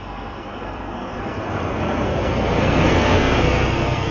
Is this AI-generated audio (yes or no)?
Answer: yes